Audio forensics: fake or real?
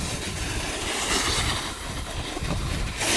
real